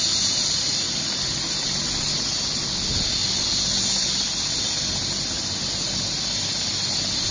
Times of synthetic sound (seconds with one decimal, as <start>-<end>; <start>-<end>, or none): none